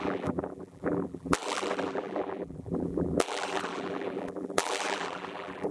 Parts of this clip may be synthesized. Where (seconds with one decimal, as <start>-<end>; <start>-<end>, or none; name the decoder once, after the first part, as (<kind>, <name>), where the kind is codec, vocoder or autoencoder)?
0.0-5.7 (vocoder, BigVGAN v2)